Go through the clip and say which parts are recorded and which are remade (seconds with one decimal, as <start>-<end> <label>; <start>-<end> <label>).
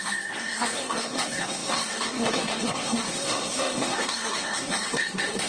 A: 0.0-5.5 remade